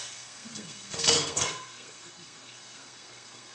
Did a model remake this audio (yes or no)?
yes